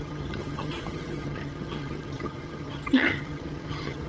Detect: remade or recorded remade